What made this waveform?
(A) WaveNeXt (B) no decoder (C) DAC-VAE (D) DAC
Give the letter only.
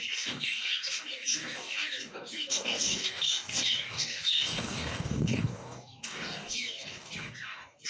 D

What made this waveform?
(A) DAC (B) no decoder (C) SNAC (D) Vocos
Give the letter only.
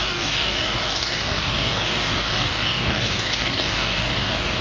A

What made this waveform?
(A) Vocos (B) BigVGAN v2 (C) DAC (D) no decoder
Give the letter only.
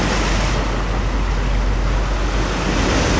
D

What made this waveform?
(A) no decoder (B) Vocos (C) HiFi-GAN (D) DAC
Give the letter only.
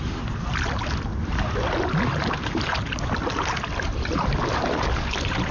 A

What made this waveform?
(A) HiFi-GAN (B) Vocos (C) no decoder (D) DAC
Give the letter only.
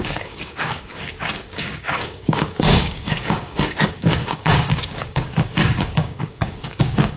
D